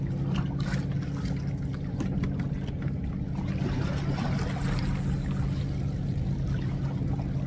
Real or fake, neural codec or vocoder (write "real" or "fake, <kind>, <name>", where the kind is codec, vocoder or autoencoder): real